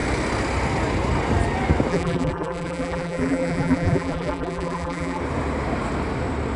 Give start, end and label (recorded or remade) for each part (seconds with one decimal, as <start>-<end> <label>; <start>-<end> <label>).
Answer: 0.0-1.9 recorded; 1.9-5.2 remade; 5.2-6.6 recorded